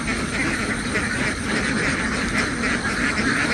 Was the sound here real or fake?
real